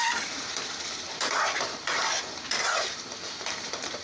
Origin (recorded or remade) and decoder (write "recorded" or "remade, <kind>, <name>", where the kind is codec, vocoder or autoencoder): remade, vocoder, BigVGAN v2